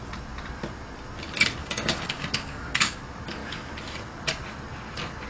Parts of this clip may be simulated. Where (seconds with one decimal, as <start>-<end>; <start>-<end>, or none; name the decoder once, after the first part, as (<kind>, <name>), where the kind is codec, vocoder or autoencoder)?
1.6-3.0 (codec, DAC)